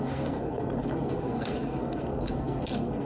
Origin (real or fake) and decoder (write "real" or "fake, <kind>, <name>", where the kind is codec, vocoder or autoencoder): fake, codec, SNAC